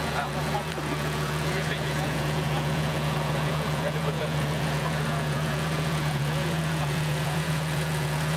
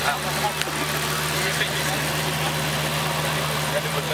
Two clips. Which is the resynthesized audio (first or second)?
first